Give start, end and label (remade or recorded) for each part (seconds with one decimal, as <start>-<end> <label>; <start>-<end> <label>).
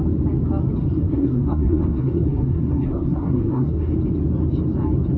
0.0-0.8 recorded; 0.8-3.9 remade; 3.9-5.2 recorded